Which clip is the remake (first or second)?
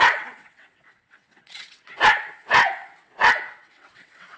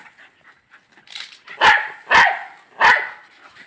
first